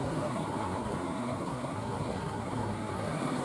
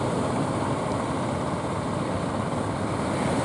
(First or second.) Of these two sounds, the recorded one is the second